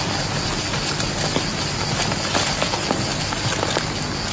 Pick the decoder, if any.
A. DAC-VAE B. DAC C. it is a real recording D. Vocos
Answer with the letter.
C